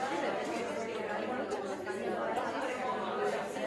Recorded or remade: recorded